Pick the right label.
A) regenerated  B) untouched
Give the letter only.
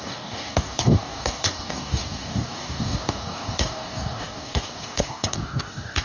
A